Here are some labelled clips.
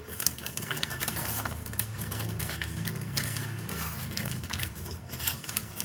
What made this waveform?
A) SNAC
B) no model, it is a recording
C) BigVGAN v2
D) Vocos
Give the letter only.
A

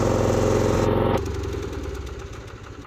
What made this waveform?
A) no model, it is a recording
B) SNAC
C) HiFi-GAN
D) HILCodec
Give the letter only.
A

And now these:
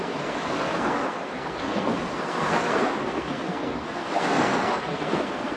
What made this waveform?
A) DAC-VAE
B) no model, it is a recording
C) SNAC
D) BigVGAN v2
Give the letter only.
C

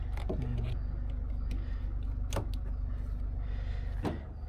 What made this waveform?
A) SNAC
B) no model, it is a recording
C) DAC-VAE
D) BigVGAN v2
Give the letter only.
B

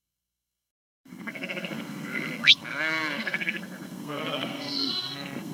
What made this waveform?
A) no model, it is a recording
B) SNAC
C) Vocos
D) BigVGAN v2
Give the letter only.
B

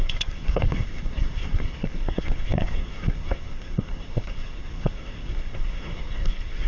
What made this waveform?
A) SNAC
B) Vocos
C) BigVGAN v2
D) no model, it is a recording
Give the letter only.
A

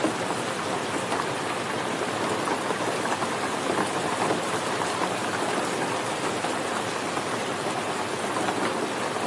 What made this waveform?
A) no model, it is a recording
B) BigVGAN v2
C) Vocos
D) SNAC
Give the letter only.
A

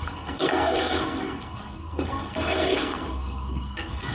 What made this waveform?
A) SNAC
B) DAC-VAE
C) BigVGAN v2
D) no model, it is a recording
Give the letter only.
A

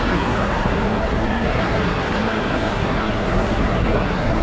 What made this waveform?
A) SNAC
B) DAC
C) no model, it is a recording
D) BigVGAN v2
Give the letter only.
A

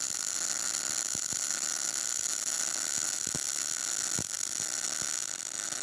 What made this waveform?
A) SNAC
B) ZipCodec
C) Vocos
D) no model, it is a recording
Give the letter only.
D